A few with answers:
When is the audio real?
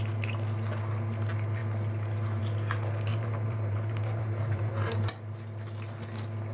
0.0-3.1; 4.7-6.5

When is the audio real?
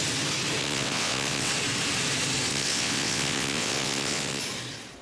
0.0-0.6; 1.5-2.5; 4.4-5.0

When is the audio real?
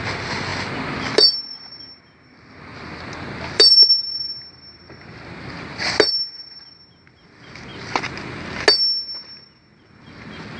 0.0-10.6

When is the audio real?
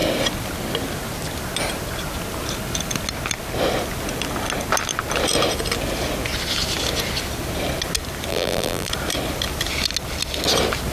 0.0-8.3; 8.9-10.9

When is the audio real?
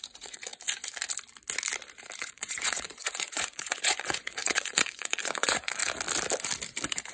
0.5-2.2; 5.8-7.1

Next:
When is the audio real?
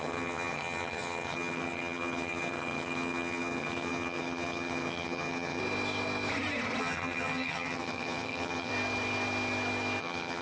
5.6-6.8; 8.7-10.0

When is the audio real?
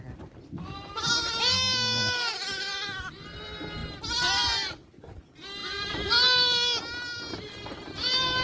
0.0-8.4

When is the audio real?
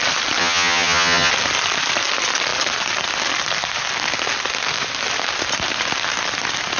0.0-0.4; 1.3-6.8